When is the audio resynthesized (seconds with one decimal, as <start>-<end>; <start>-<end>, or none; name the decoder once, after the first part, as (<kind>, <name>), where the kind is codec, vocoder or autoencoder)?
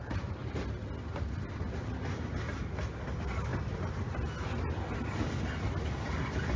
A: 0.0-0.4 (vocoder, BigVGAN v2); 2.8-3.5